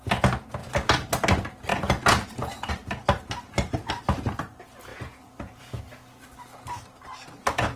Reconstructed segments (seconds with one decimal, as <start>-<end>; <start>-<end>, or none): 1.7-2.7; 4.9-5.8